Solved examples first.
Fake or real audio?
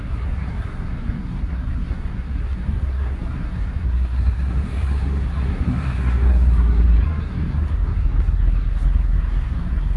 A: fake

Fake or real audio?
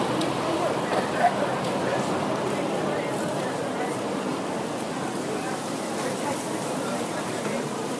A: fake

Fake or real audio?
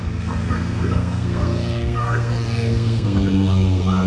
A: fake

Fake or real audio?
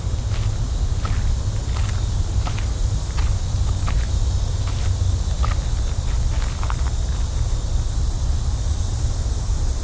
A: real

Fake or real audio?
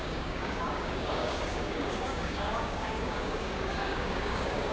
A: fake